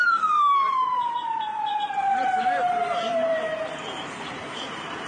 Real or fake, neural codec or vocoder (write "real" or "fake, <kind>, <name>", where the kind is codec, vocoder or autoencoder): fake, vocoder, BigVGAN v2